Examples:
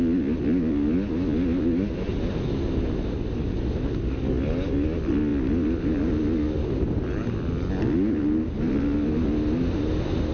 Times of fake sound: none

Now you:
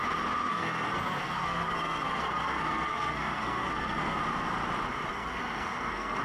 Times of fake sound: 0.5-4.2; 5.1-6.2

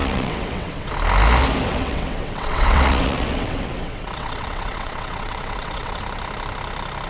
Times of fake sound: 0.0-0.9; 1.7-6.0

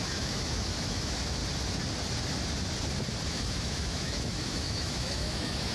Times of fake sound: 0.0-1.4; 3.3-5.7

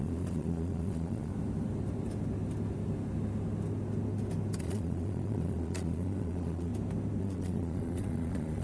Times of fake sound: 0.0-1.3; 4.6-6.7; 7.2-8.6

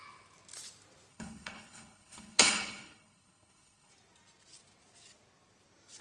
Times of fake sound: 1.1-3.9